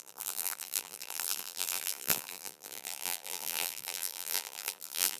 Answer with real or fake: fake